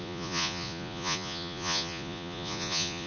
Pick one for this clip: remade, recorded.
remade